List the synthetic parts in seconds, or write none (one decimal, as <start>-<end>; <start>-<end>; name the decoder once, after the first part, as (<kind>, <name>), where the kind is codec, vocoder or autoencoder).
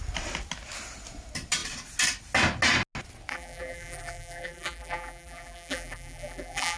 3.3-6.8 (vocoder, BigVGAN v2)